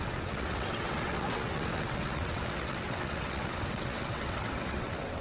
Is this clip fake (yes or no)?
yes